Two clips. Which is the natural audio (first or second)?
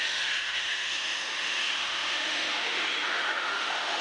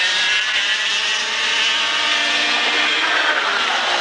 second